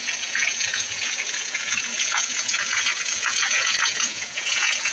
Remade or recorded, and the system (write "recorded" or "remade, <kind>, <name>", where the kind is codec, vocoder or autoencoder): remade, vocoder, Vocos